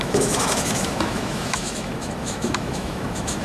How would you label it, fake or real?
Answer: fake